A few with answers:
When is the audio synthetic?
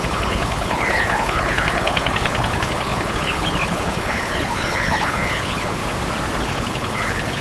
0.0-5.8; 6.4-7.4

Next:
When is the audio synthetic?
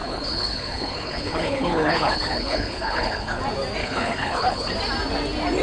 0.0-3.4; 3.8-4.7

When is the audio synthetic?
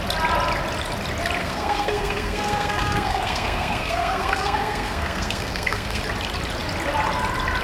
1.4-6.0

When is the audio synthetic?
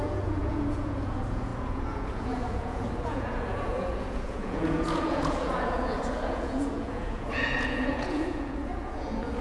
0.0-9.4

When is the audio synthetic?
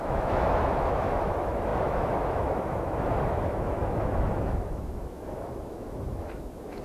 0.0-6.8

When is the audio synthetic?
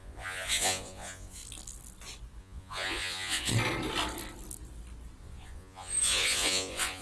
0.0-1.4; 2.4-3.5; 5.2-7.0